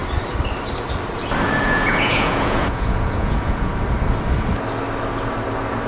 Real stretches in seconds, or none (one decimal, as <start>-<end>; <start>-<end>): 0.0-1.6; 3.7-5.9